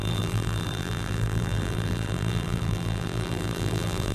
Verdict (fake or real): fake